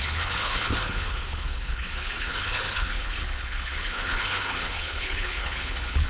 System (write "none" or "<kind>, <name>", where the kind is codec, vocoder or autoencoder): codec, HILCodec